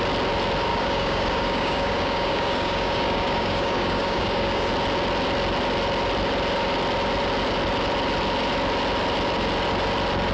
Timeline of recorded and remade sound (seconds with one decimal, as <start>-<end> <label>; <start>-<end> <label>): 0.0-0.7 recorded; 0.7-4.7 remade; 4.7-10.3 recorded